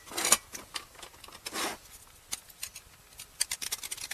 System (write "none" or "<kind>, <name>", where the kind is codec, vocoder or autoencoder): none